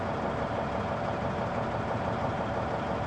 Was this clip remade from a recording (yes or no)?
no